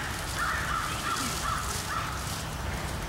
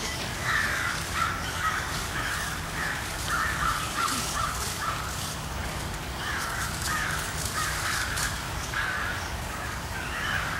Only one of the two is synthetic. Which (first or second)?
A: second